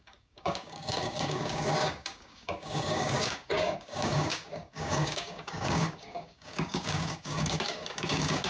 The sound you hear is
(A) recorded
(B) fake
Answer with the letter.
B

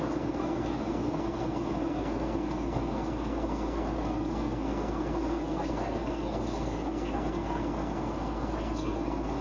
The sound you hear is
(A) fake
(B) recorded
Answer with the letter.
A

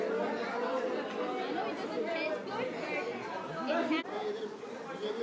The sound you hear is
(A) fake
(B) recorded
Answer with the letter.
B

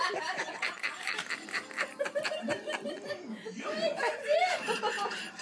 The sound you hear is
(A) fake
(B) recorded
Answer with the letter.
A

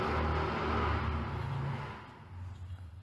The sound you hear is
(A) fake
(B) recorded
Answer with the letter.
B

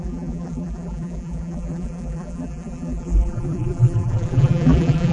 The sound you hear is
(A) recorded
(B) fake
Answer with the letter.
B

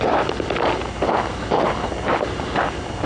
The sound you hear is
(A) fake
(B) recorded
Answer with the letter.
B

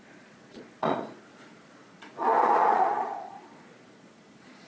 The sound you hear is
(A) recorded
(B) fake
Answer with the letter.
B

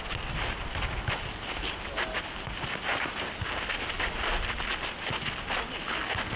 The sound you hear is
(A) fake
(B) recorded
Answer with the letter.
B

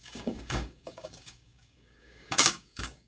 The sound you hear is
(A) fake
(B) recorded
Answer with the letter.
A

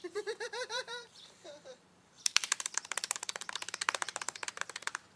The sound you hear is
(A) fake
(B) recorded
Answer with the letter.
A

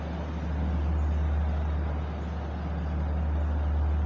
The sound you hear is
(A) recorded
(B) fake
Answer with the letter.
A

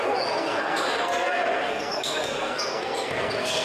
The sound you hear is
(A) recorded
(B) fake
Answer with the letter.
B